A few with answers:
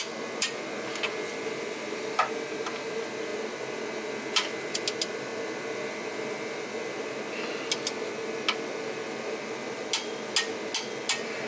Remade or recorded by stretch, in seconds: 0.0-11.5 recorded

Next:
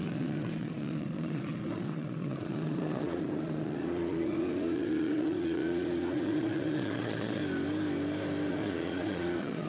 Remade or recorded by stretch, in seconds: 0.0-7.4 remade; 7.4-8.5 recorded; 8.5-9.7 remade

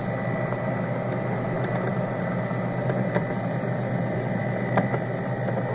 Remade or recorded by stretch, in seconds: 0.0-5.7 recorded

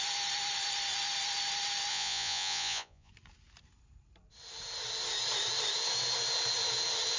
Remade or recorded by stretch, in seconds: 0.0-1.9 recorded; 1.9-3.1 remade; 3.1-7.2 recorded

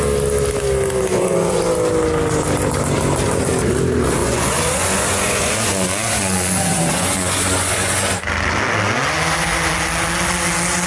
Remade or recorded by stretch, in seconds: 0.0-1.1 recorded; 1.1-1.6 remade; 1.6-4.2 recorded; 4.2-8.2 remade; 8.2-10.9 recorded

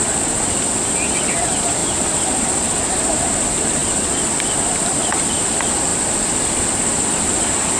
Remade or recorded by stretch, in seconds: 0.0-7.8 recorded

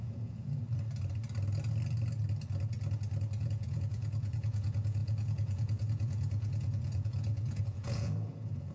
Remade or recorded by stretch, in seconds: 0.0-0.6 remade; 0.6-3.4 recorded; 3.4-8.7 remade